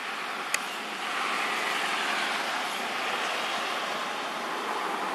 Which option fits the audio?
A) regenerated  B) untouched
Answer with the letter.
B